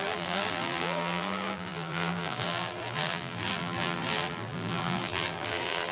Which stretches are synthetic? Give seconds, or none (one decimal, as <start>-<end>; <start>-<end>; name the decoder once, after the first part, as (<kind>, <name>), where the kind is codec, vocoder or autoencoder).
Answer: 0.0-5.9 (vocoder, BigVGAN v2)